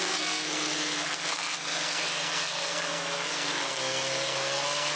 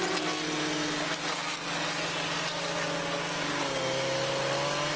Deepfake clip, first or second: first